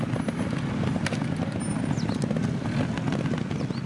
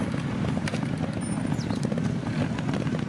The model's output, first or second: second